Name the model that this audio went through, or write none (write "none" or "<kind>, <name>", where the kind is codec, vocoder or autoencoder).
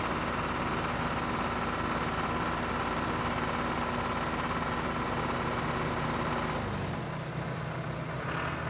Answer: none